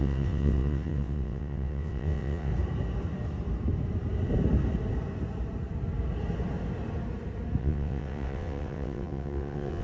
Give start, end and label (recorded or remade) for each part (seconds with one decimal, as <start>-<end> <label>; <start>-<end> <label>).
0.0-2.5 remade; 2.5-7.6 recorded; 7.6-9.8 remade